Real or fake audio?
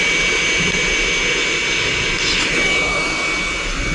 real